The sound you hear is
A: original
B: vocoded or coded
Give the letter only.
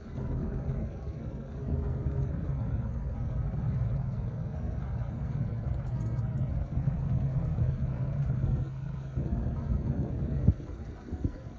B